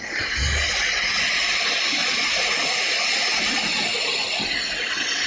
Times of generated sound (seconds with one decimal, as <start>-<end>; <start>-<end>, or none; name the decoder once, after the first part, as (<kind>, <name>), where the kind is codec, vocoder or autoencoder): none